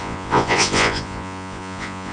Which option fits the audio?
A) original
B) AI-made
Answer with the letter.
B